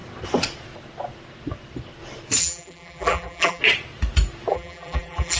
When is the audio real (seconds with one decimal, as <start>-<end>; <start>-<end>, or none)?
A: 0.0-2.4; 3.6-4.5